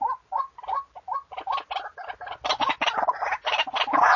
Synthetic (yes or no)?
no